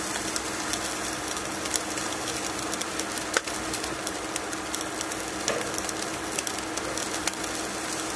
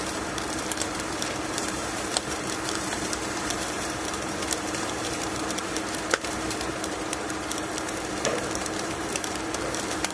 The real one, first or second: first